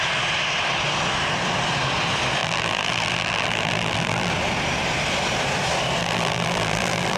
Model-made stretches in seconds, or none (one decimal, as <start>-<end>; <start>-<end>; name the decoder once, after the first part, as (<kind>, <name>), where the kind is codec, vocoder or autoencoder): 2.4-4.3 (vocoder, BigVGAN v2); 6.0-7.2